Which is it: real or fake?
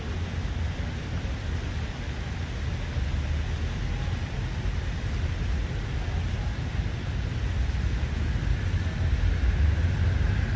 real